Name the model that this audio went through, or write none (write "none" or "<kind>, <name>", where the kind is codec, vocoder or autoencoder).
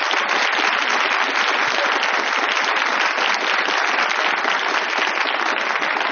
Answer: none